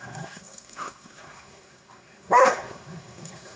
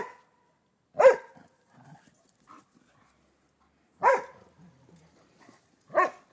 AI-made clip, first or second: first